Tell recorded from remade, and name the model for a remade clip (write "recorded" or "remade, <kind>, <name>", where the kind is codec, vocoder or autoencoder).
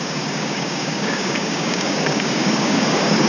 remade, codec, DAC